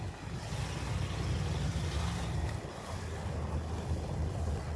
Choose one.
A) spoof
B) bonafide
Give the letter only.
B